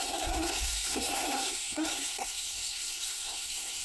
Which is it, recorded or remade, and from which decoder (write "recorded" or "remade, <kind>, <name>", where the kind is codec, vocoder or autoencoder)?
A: remade, codec, SNAC